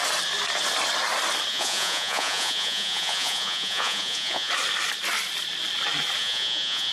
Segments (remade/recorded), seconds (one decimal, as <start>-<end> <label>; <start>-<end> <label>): 0.0-1.5 recorded; 1.5-4.5 remade; 4.5-6.2 recorded; 6.2-6.9 remade